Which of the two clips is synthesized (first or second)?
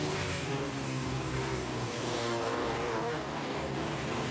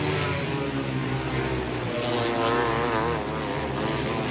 first